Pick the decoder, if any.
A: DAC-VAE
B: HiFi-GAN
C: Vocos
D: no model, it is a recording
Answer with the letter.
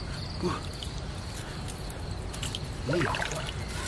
D